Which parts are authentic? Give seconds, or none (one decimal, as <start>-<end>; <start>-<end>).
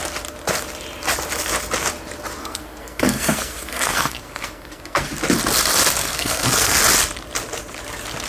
0.0-2.4; 5.1-6.0; 6.8-8.3